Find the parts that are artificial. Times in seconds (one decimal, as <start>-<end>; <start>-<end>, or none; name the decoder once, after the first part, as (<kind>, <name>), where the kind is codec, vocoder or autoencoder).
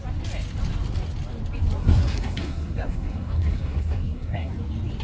1.8-4.5 (codec, SNAC)